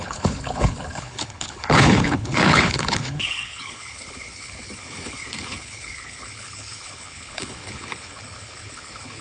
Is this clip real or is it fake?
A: fake